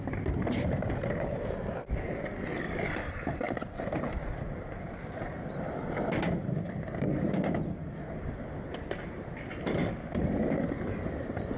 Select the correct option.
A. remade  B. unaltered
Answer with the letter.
B